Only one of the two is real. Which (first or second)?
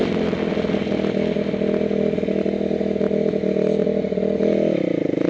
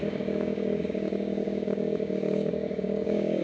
first